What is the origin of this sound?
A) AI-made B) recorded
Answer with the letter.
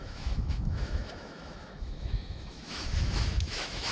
A